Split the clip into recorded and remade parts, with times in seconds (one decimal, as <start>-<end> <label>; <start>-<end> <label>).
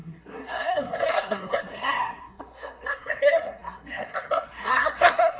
0.0-5.4 remade